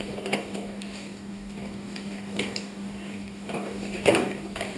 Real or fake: fake